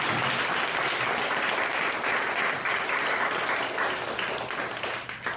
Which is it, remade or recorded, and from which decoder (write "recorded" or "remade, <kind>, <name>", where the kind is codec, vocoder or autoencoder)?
recorded